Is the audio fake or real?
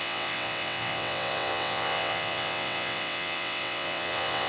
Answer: fake